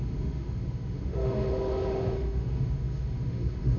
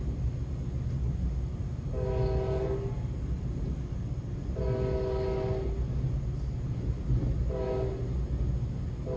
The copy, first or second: first